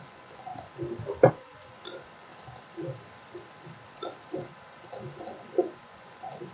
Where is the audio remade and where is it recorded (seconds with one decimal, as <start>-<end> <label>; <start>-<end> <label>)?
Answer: 0.0-0.5 remade; 0.5-1.3 recorded; 1.3-2.3 remade; 2.3-4.3 recorded; 4.3-6.5 remade